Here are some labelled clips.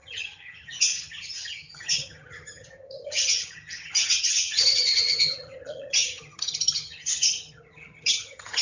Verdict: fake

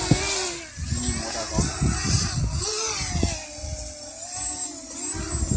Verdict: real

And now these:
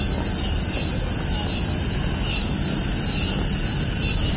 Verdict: real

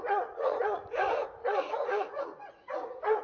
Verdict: fake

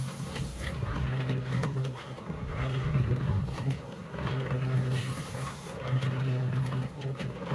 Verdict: fake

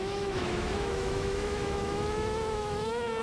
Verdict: fake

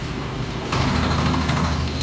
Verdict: fake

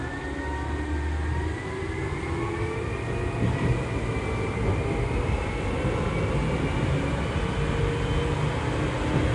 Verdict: real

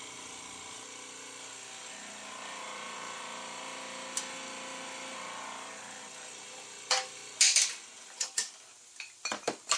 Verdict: real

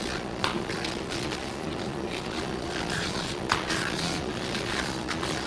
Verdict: fake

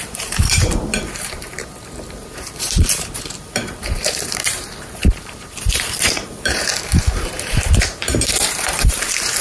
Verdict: fake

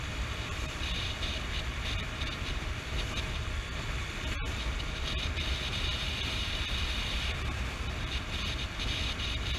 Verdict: fake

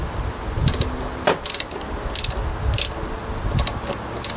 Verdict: real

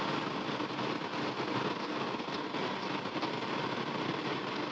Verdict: real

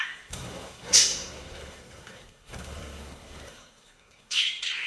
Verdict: fake